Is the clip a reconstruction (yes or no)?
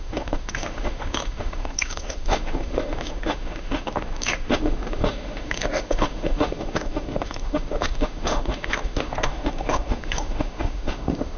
yes